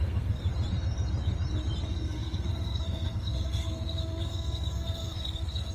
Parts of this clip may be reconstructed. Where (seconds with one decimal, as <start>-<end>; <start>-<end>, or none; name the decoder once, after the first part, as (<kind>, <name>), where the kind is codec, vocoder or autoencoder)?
0.0-0.4 (codec, SNAC); 1.8-5.7